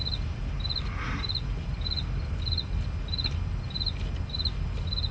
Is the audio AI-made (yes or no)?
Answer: no